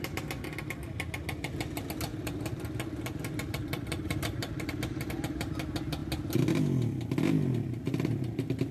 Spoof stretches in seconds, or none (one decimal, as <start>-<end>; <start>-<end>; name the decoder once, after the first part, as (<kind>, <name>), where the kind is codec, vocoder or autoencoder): 2.1-5.5 (vocoder, BigVGAN v2)